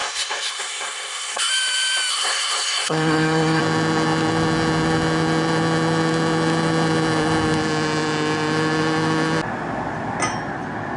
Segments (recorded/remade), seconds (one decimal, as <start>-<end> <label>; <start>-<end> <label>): 0.0-1.5 remade; 1.5-2.1 recorded; 2.1-3.6 remade; 3.6-11.0 recorded